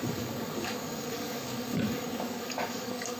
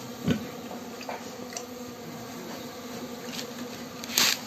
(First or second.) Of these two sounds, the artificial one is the first